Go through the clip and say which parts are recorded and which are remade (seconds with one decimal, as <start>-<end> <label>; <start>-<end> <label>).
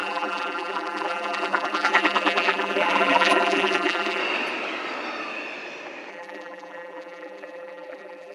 0.0-4.2 remade; 4.2-6.1 recorded; 6.1-8.3 remade